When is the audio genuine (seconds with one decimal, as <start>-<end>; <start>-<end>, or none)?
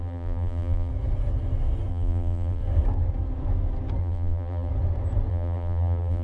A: 0.9-1.9; 2.6-4.0; 4.7-5.3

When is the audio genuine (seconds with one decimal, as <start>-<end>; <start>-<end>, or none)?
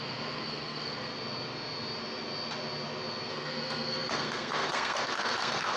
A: 1.1-3.3